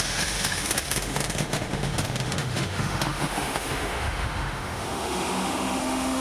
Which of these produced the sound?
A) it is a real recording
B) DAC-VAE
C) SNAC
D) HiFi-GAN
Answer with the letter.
B